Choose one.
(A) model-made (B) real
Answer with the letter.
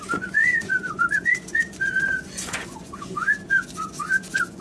A